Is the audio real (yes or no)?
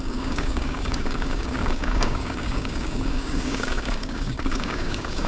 no